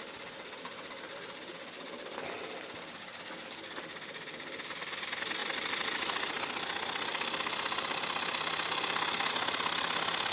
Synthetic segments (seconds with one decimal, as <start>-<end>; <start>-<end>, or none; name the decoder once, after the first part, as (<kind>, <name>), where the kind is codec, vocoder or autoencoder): none